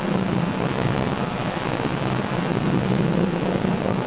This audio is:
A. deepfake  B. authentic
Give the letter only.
A